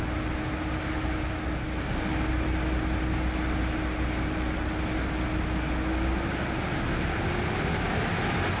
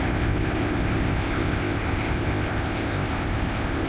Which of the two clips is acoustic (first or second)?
first